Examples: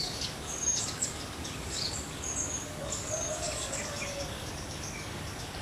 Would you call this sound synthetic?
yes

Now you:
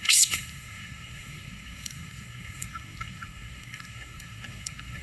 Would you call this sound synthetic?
yes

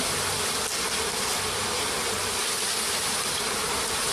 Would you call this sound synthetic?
no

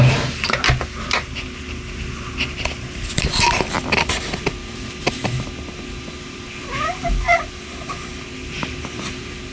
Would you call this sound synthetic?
no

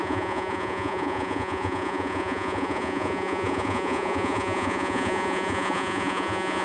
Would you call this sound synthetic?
yes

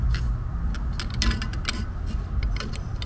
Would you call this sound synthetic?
no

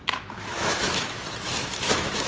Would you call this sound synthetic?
yes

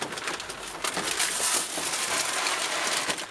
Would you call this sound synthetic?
no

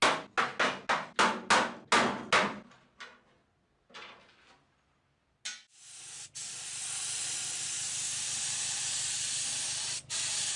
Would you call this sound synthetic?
no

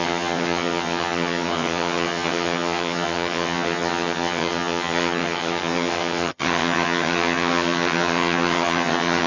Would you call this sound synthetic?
yes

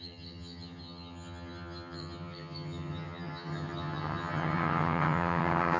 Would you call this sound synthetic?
yes